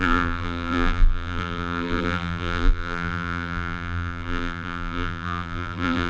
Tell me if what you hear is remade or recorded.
remade